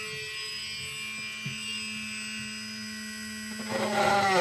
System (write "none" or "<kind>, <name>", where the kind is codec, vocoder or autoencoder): none